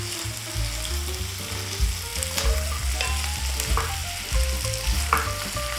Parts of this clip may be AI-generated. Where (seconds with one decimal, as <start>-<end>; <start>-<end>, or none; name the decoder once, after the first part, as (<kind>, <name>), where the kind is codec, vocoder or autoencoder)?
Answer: none